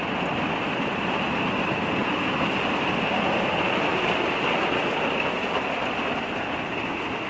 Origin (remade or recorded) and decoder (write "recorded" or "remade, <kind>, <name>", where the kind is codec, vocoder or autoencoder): recorded